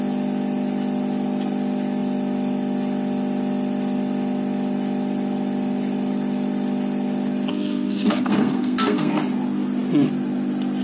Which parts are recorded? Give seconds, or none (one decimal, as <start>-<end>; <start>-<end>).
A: 0.0-7.5; 9.2-10.8